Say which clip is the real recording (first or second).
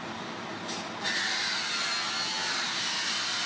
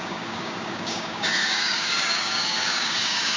first